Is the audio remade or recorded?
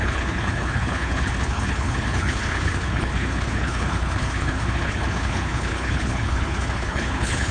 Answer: remade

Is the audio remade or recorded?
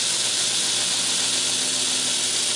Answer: recorded